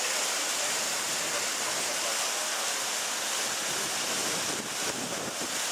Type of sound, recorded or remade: recorded